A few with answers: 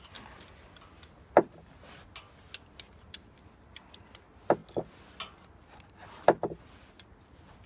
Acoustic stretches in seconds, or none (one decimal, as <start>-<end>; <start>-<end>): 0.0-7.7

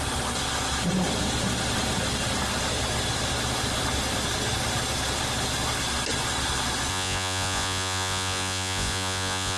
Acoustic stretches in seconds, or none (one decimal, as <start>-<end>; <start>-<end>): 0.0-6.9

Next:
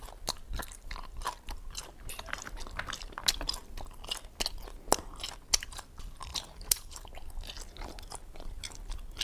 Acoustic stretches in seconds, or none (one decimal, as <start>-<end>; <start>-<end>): 0.0-6.3; 7.1-9.2

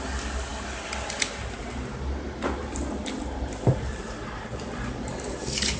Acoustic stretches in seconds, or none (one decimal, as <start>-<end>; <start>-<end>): 0.0-5.8

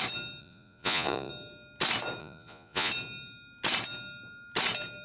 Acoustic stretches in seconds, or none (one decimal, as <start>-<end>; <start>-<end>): 0.0-0.4; 1.3-2.2; 2.9-5.0

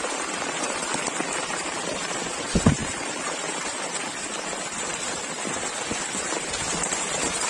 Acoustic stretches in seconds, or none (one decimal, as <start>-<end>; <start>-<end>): none

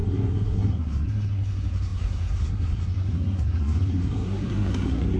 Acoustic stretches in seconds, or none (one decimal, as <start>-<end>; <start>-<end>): none

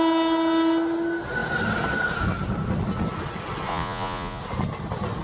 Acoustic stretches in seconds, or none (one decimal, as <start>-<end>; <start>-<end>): 0.0-3.7; 4.4-5.2